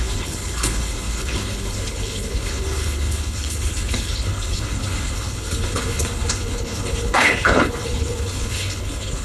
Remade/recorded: remade